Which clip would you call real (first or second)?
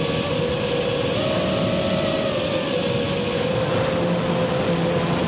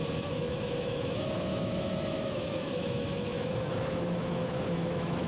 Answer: first